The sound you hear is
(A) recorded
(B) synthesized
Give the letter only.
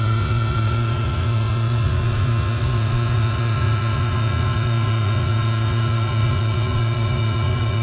B